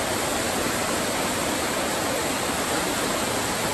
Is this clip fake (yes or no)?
no